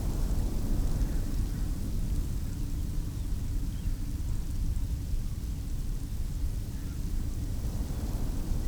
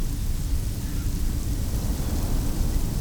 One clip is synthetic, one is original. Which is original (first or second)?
second